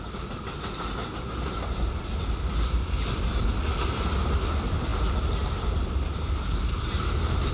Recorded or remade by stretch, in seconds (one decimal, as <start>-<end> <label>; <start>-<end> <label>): 0.0-7.5 recorded